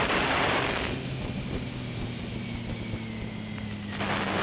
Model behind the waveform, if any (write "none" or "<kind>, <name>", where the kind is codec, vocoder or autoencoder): none